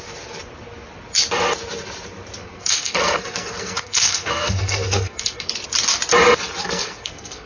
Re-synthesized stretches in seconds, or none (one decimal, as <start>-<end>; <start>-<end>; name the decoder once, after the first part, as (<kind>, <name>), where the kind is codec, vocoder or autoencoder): 2.4-5.5 (codec, SNAC); 6.6-7.5